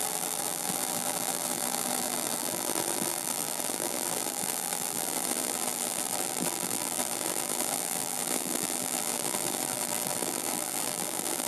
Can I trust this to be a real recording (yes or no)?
no